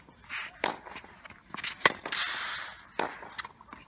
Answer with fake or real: real